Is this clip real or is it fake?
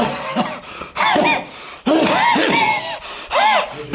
real